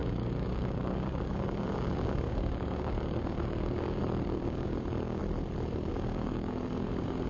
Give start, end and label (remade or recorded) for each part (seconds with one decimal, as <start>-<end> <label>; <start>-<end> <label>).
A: 0.0-5.2 remade; 5.2-5.9 recorded; 5.9-7.3 remade